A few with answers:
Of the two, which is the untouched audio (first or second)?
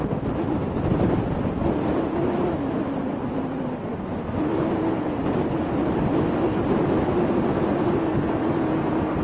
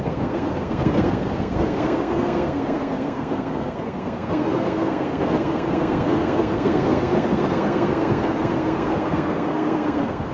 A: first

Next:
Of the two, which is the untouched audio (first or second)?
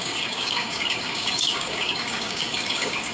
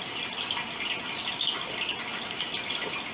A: second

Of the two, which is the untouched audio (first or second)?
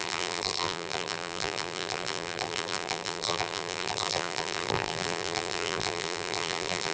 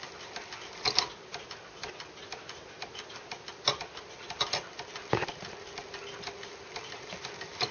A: second